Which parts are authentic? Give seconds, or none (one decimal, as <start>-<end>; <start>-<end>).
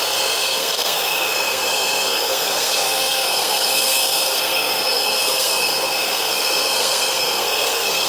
none